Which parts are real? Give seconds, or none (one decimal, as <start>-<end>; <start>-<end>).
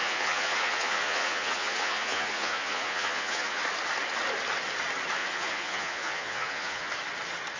3.6-5.2; 6.9-7.6